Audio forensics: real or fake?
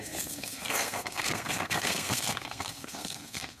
fake